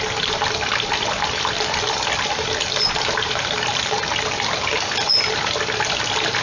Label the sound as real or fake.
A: real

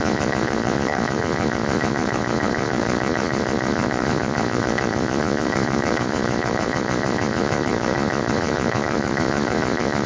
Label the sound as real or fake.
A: fake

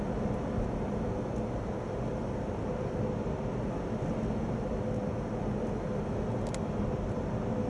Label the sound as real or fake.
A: real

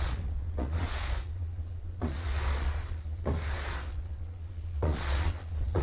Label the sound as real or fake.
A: fake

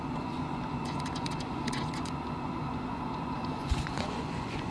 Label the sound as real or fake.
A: fake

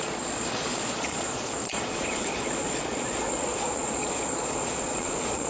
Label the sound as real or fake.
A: fake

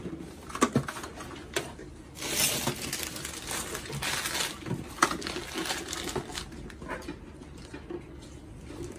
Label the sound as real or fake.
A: real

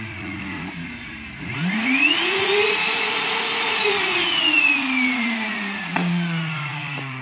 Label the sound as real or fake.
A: fake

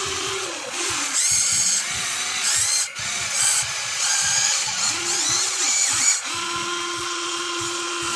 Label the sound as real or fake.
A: fake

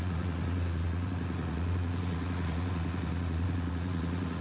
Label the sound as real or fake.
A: fake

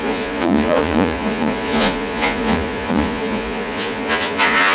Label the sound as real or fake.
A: fake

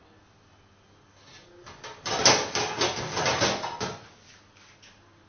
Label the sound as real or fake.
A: real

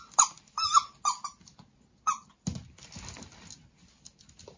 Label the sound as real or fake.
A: real